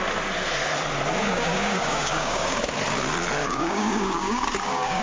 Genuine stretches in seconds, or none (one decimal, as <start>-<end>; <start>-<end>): 0.0-1.2; 2.6-3.4